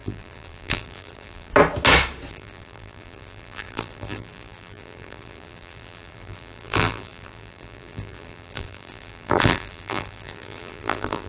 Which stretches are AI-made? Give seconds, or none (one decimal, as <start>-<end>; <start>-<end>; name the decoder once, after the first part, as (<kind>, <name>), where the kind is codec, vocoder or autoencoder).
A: 0.0-1.5 (vocoder, BigVGAN v2); 2.3-11.3